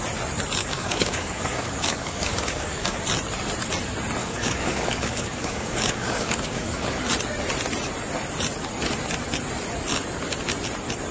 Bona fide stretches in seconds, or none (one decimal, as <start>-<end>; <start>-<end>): 0.0-0.6; 3.0-4.2; 7.0-11.1